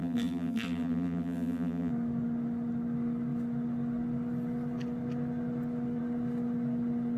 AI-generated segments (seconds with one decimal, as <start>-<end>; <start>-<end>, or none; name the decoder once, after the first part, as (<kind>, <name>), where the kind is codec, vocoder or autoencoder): 0.0-1.9 (vocoder, BigVGAN v2)